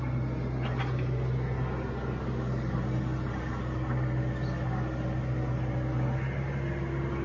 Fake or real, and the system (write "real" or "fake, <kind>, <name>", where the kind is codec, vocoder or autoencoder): real